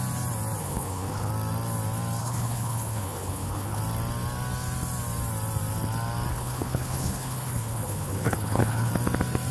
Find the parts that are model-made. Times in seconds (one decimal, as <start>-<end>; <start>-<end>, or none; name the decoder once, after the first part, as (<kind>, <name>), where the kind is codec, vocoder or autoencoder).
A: 0.6-1.3 (codec, HILCodec); 2.2-3.8; 6.3-8.9